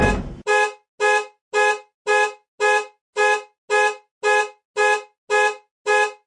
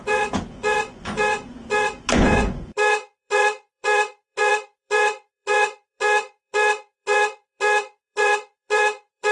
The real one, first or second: first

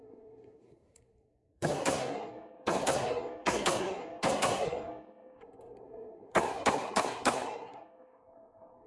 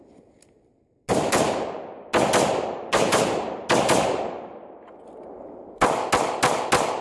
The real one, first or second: second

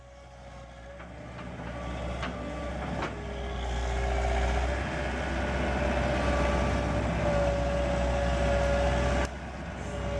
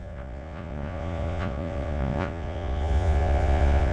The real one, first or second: first